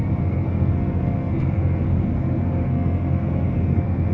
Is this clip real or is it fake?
fake